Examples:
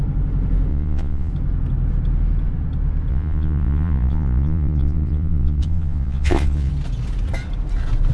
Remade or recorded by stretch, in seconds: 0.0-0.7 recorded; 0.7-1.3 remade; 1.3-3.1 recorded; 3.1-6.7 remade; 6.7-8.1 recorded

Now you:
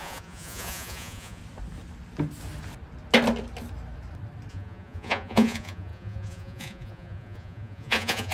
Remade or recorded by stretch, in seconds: 0.0-1.4 remade; 1.4-4.5 recorded; 4.5-8.3 remade

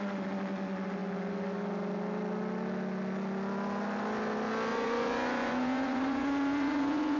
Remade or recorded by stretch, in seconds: 0.0-4.7 recorded; 4.7-7.2 remade

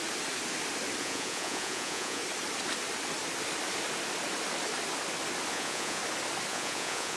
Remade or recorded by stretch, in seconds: 0.0-1.0 recorded; 1.0-2.2 remade; 2.2-5.5 recorded; 5.5-6.0 remade; 6.0-6.5 recorded; 6.5-7.2 remade

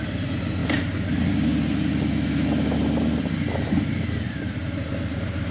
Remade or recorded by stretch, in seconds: 0.0-5.5 recorded